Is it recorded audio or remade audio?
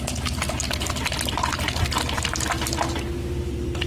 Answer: recorded